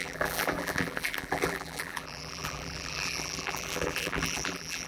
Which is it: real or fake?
fake